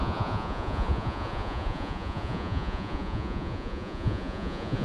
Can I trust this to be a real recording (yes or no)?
no